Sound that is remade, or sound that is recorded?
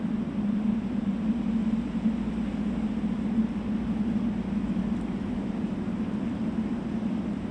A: recorded